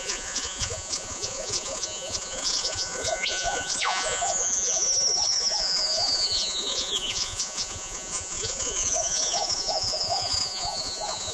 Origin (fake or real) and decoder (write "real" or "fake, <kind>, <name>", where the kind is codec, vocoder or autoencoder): fake, vocoder, Vocos